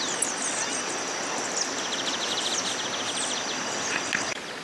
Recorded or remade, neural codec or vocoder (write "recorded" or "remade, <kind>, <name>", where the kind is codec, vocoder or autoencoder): recorded